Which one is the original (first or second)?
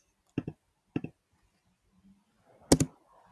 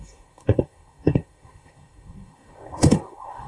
first